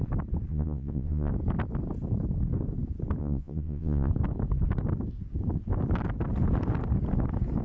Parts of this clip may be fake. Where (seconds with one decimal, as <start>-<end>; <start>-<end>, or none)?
0.5-1.3; 3.2-4.1